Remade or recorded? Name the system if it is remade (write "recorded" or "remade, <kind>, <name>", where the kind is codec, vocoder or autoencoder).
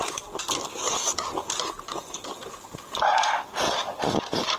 recorded